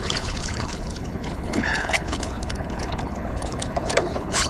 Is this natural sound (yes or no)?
no